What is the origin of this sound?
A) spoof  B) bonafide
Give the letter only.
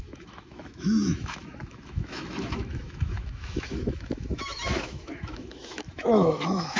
A